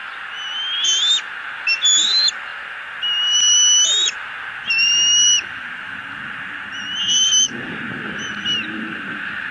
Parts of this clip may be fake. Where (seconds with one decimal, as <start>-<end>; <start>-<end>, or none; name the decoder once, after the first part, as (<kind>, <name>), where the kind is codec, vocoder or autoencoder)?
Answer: none